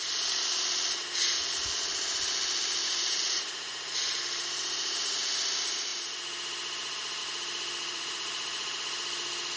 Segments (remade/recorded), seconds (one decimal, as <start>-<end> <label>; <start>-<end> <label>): 0.0-2.8 recorded; 2.8-4.2 remade; 4.2-7.8 recorded; 7.8-8.8 remade; 8.8-9.6 recorded